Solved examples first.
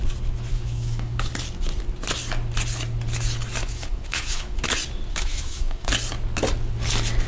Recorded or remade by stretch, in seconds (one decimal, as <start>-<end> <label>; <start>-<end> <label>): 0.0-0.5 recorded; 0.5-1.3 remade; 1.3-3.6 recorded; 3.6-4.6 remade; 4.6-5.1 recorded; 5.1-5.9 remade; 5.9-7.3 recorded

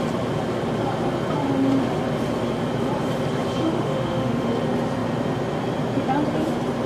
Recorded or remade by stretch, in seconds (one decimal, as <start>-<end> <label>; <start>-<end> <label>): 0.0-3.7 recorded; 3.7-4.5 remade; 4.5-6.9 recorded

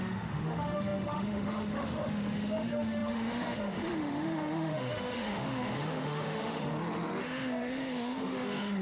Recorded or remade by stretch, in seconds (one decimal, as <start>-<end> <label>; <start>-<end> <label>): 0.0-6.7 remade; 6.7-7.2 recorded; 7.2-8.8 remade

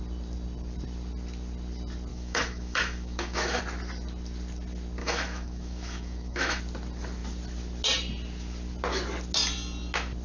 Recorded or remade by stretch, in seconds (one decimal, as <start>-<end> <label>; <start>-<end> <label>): 0.0-2.1 recorded; 2.1-3.6 remade; 3.6-5.0 recorded; 5.0-6.6 remade; 6.6-10.2 recorded

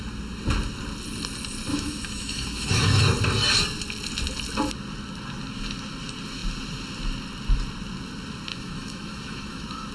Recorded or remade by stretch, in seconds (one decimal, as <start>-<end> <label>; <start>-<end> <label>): 0.0-1.7 recorded; 1.7-3.0 remade; 3.0-8.5 recorded; 8.5-9.9 remade

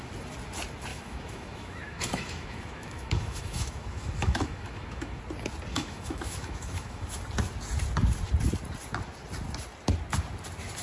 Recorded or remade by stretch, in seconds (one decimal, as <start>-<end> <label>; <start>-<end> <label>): 0.0-0.9 recorded; 0.9-5.2 remade; 5.2-5.7 recorded; 5.7-7.2 remade; 7.2-10.8 recorded

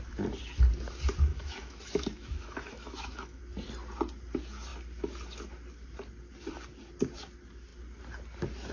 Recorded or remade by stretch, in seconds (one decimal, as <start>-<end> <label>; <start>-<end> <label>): 0.0-1.3 recorded; 1.3-3.4 remade; 3.4-8.7 recorded